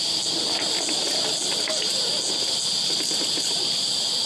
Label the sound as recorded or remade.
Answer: recorded